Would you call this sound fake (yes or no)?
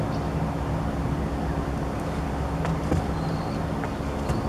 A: no